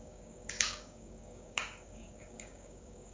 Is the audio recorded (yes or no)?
no